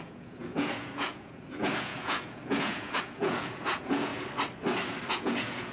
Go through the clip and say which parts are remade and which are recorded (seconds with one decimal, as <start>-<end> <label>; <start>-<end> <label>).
0.0-4.1 remade; 4.1-5.1 recorded; 5.1-5.7 remade